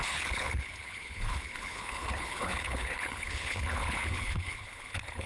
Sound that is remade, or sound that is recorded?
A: remade